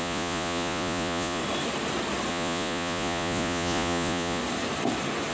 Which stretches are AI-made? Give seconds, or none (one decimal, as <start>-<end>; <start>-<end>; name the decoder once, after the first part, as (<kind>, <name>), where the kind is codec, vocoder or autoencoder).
0.0-1.4 (vocoder, Vocos); 2.3-4.4